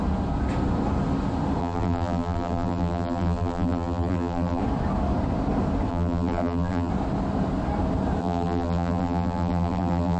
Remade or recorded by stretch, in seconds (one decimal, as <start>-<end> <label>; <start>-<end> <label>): 0.0-1.6 recorded; 1.6-4.6 remade; 4.6-5.9 recorded; 5.9-6.9 remade; 6.9-8.2 recorded; 8.2-10.2 remade